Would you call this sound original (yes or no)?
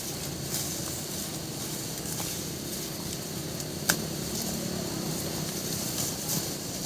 yes